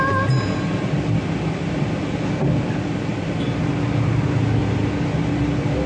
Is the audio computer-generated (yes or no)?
no